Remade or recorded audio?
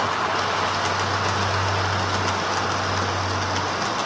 recorded